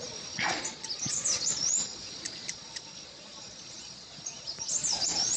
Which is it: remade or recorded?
remade